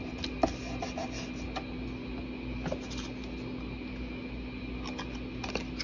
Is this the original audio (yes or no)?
yes